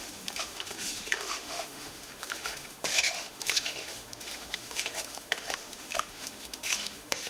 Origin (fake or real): fake